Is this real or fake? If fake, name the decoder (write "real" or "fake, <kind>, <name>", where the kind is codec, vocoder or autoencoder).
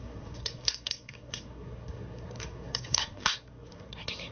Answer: fake, codec, SNAC